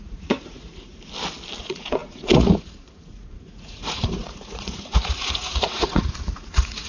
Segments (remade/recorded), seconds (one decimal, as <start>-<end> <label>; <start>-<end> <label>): 0.0-0.9 remade; 0.9-1.6 recorded; 1.6-6.9 remade